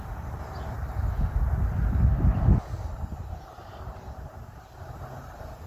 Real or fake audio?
real